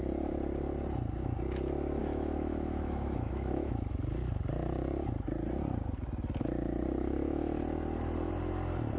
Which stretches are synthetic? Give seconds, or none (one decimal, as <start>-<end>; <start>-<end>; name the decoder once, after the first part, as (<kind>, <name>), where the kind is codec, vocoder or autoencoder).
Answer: 2.0-3.8 (autoencoder, DAC-VAE)